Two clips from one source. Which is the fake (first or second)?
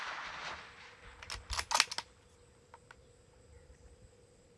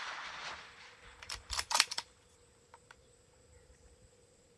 second